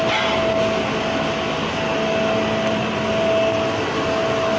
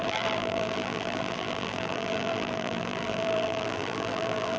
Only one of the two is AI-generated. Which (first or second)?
second